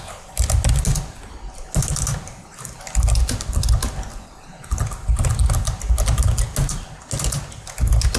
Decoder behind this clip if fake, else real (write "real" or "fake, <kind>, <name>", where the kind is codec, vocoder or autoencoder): real